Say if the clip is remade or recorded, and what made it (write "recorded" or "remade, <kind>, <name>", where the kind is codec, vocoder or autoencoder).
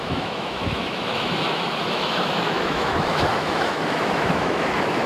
remade, autoencoder, DAC-VAE